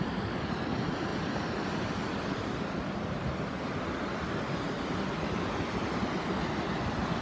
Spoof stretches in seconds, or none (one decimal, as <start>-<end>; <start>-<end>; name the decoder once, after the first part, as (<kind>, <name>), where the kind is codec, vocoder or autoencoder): none